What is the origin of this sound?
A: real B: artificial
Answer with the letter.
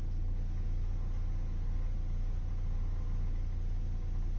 A